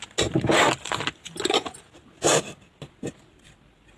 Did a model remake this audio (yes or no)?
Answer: no